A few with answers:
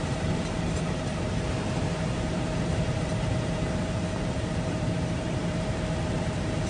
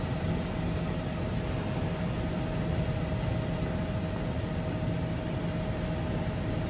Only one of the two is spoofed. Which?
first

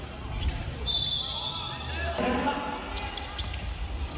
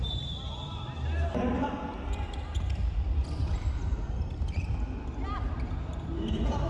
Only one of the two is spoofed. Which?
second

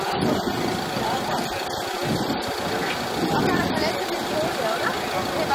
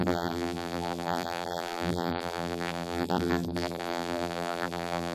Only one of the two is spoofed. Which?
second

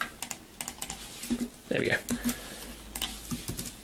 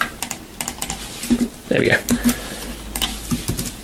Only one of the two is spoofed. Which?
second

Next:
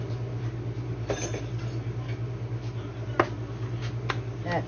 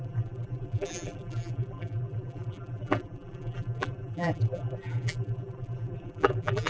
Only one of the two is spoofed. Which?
second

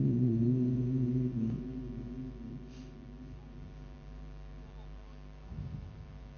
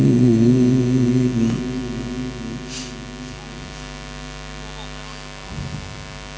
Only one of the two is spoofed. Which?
first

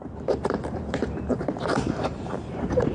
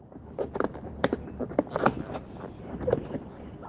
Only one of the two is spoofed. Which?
first